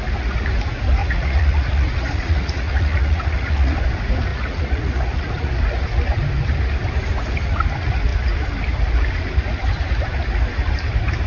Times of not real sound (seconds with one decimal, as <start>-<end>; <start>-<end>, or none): 1.0-3.8; 4.3-5.5